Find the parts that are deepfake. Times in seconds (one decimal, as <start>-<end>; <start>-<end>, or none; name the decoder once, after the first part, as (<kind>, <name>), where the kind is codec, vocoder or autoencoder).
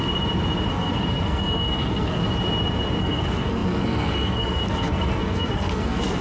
0.7-2.2 (codec, SNAC); 3.0-6.2